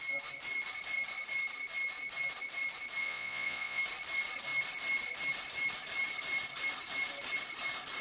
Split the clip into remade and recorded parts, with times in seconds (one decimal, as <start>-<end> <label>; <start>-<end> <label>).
0.0-3.0 recorded; 3.0-3.8 remade; 3.8-8.0 recorded